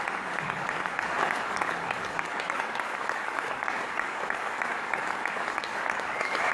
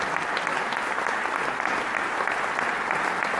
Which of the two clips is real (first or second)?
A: second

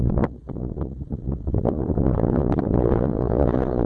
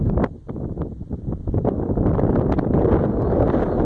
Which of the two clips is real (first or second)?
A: second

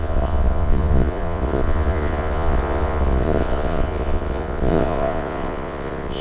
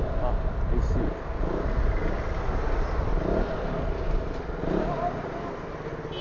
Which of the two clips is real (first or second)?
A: second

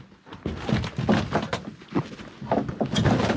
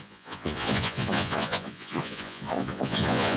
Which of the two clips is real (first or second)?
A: first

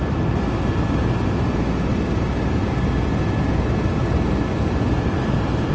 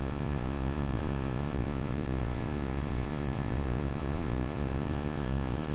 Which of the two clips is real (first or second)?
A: first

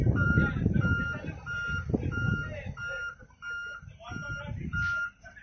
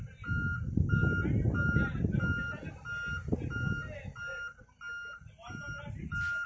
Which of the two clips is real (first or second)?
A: second